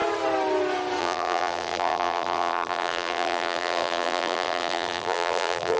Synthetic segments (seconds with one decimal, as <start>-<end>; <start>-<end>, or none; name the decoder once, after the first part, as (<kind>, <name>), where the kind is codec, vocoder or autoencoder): 1.0-5.8 (vocoder, BigVGAN v2)